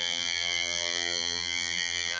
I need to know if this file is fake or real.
fake